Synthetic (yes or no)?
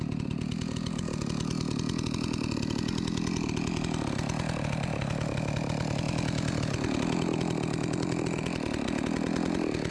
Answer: no